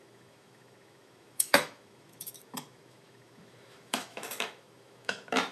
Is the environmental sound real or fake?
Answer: fake